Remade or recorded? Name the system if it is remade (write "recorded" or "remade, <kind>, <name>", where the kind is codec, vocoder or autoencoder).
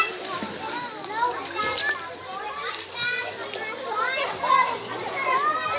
recorded